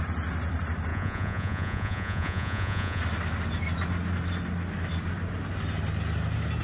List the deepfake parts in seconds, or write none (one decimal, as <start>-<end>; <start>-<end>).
0.9-3.0